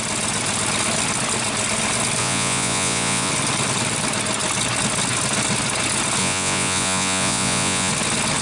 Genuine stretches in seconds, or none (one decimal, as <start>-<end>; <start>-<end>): 0.0-2.2; 3.3-6.2; 7.9-8.4